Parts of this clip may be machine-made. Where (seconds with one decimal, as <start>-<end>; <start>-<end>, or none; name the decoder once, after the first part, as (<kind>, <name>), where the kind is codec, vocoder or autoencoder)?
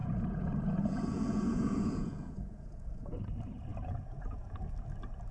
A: 0.0-3.2 (vocoder, Vocos); 3.7-4.7